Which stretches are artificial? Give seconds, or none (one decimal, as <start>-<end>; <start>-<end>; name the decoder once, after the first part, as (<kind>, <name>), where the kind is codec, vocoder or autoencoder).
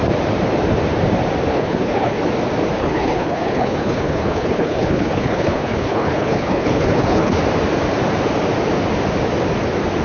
1.5-2.2 (codec, HILCodec); 2.8-7.4